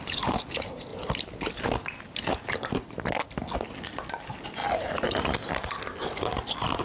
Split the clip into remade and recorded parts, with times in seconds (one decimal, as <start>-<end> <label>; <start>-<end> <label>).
0.0-6.8 recorded